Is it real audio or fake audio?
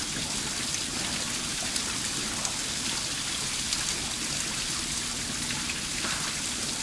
real